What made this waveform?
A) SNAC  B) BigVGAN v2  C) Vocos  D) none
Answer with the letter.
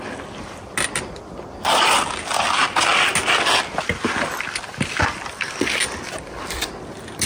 D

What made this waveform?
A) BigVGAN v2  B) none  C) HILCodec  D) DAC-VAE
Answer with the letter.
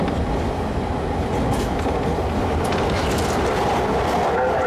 B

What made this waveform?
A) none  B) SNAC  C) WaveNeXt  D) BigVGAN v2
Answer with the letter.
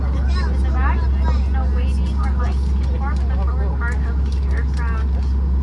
A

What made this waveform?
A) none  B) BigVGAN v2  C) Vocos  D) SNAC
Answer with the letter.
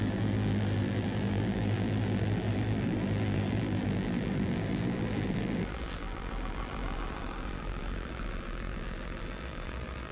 B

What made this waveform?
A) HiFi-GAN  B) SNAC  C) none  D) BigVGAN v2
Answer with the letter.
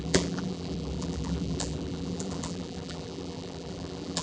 D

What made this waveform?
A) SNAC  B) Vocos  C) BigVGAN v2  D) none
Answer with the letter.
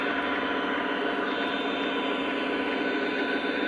D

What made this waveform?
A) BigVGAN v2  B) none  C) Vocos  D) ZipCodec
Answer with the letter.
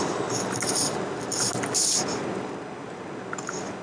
B